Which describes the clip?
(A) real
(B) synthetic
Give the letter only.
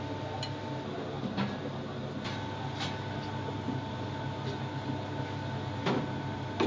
A